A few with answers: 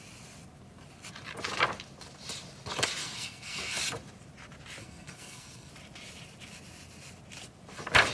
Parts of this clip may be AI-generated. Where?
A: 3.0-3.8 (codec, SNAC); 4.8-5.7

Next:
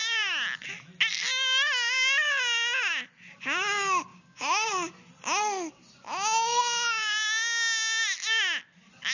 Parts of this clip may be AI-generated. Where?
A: 4.1-4.7 (codec, DAC)

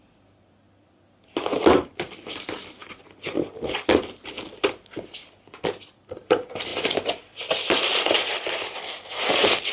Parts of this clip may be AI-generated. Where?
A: none

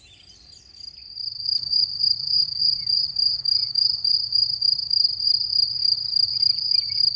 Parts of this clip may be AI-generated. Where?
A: none

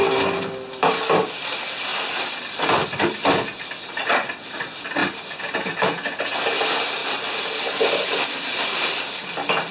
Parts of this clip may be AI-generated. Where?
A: 1.9-4.6 (vocoder, BigVGAN v2); 5.0-5.5; 7.0-7.9

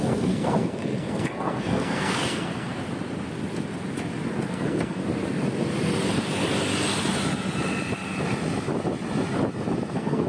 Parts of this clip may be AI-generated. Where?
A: 0.0-2.8 (codec, SNAC); 4.5-5.0; 9.9-10.3

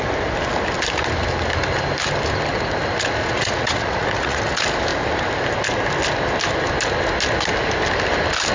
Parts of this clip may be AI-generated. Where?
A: 3.2-4.4 (vocoder, Vocos)

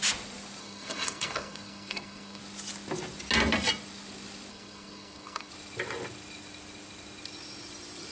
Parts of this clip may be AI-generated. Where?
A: 0.6-2.4 (codec, SNAC); 4.5-5.5